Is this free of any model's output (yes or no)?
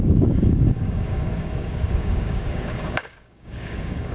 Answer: no